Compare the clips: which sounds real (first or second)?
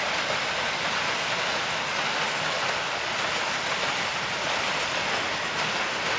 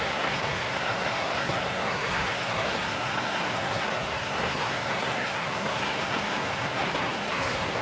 first